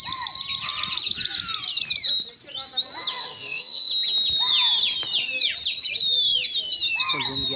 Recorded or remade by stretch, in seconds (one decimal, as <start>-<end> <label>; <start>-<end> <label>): 0.0-3.1 recorded; 3.1-3.9 remade; 3.9-7.6 recorded